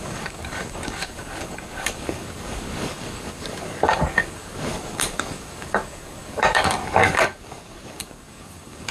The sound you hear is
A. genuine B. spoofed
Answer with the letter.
B